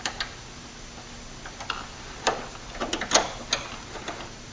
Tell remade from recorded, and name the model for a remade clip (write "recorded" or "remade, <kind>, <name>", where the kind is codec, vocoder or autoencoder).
recorded